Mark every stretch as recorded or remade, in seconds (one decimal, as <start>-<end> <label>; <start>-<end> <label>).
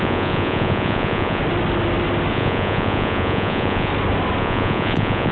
0.0-1.4 remade; 1.4-2.3 recorded; 2.3-3.9 remade; 3.9-4.4 recorded; 4.4-5.3 remade